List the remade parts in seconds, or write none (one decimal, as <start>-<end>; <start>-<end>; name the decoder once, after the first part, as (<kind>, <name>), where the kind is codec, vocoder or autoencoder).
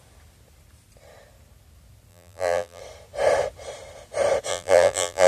2.1-2.8 (vocoder, BigVGAN v2); 4.5-5.3